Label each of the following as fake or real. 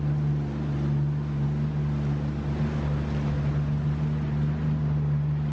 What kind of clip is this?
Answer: real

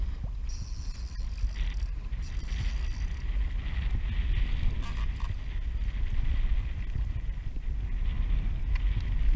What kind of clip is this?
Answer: real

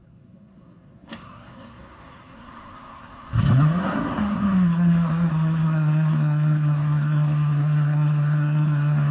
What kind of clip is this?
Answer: fake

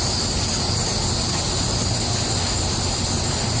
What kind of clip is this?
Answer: real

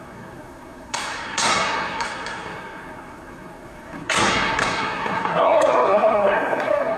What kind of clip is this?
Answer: fake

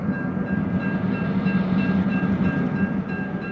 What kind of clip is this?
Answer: real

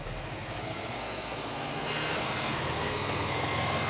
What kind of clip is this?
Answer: fake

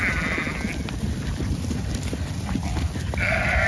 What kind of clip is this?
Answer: real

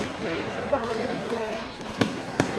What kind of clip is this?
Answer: fake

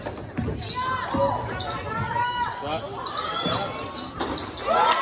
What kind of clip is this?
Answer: real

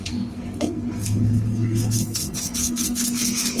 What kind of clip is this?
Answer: fake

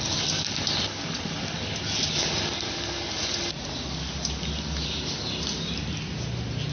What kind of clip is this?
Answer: real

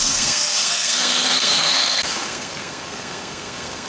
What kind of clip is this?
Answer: fake